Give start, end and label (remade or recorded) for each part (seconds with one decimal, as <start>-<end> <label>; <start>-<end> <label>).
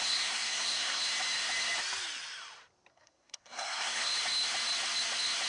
0.0-1.0 remade; 1.0-2.9 recorded; 2.9-4.1 remade; 4.1-5.5 recorded